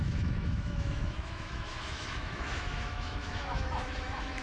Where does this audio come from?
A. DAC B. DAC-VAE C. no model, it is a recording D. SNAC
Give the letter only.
B